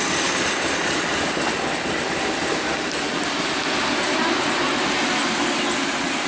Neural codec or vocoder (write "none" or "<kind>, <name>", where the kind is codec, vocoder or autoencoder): none